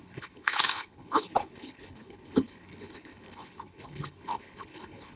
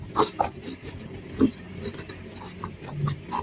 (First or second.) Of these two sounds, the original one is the second